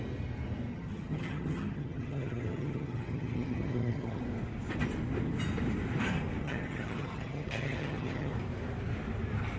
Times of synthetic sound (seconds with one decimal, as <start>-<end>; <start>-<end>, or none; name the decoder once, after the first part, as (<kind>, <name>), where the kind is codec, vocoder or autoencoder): 0.7-4.2 (vocoder, HiFi-GAN); 6.4-8.3